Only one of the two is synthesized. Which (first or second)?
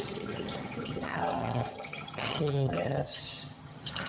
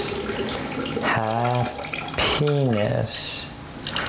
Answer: first